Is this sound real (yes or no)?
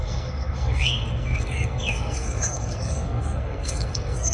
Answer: no